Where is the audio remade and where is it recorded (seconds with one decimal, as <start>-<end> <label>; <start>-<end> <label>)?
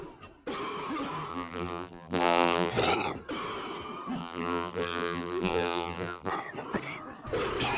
0.0-1.3 recorded; 1.3-2.7 remade; 2.7-4.2 recorded; 4.2-6.3 remade; 6.3-7.8 recorded